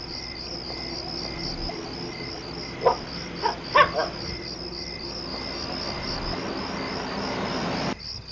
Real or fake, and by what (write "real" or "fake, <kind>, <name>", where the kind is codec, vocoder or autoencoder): real